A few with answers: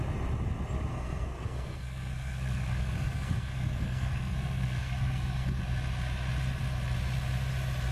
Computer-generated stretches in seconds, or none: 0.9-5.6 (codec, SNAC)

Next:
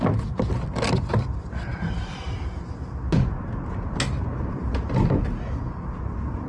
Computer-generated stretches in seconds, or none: none